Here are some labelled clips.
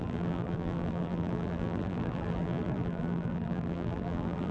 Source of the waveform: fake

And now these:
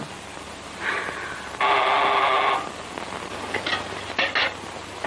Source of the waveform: real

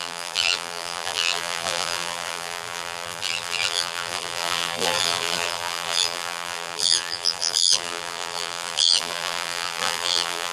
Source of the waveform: fake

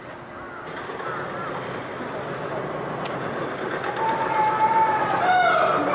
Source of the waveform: real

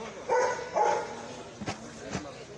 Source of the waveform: real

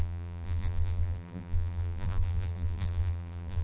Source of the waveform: fake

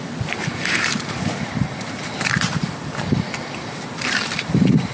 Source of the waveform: fake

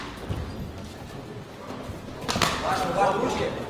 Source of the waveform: real